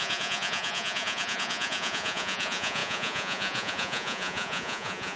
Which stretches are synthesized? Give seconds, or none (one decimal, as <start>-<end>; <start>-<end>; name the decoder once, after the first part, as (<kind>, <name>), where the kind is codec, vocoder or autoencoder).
0.0-5.2 (vocoder, Vocos)